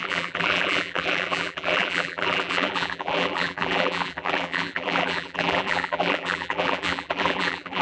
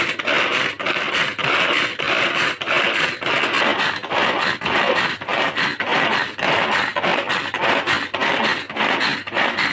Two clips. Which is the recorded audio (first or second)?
second